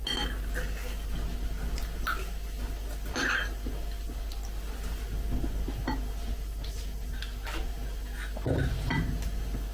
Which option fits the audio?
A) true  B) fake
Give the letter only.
A